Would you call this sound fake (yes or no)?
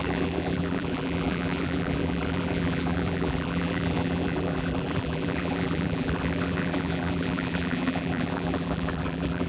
yes